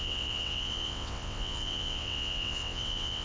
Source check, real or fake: fake